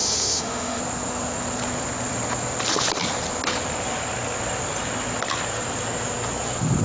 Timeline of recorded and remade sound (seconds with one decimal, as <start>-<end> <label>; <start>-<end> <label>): 0.0-0.8 remade; 0.8-6.8 recorded